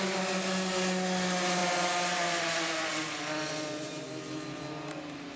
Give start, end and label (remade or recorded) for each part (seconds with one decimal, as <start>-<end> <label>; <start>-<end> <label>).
0.0-5.4 recorded